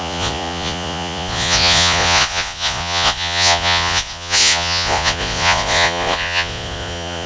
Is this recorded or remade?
remade